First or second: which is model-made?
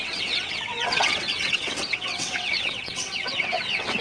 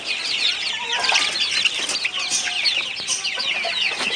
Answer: first